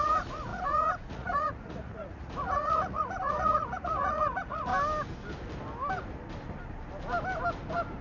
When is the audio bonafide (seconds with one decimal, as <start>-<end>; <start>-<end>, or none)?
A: 4.7-8.0